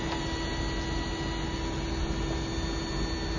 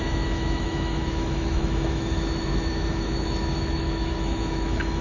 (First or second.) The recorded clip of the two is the first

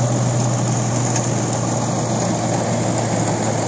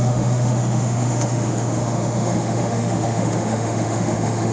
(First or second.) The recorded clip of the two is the first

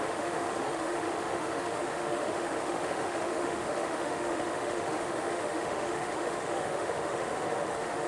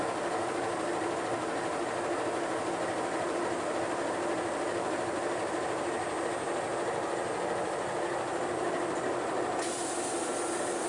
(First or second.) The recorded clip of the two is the second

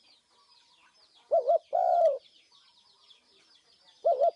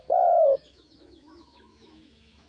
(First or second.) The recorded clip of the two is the first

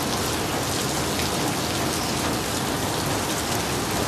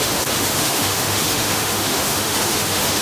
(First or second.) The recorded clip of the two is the first